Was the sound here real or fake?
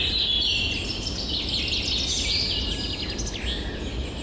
real